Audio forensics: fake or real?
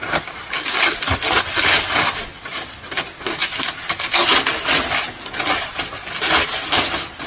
real